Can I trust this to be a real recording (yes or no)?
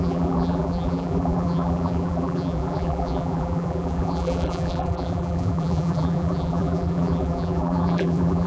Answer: no